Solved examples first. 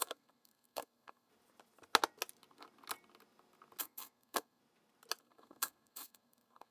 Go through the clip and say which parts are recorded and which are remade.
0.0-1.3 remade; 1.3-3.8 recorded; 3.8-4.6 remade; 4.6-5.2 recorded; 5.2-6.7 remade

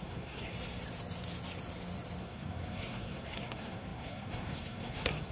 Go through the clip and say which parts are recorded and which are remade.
0.0-0.5 remade; 0.5-2.2 recorded; 2.2-5.3 remade

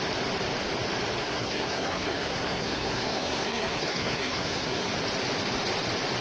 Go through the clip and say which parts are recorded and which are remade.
0.0-1.2 recorded; 1.2-4.9 remade; 4.9-6.2 recorded